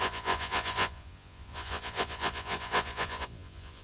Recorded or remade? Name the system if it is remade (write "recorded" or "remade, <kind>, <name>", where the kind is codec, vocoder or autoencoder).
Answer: remade, vocoder, Vocos